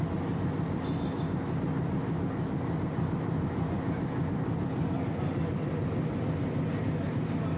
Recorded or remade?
recorded